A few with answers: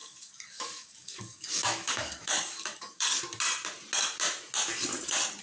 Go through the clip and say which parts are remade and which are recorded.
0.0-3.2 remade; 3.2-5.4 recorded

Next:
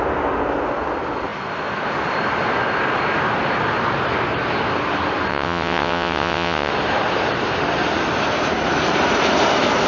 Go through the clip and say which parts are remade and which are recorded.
0.0-5.3 recorded; 5.3-6.7 remade; 6.7-9.9 recorded

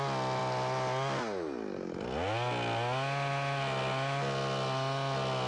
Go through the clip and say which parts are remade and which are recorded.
0.0-5.5 recorded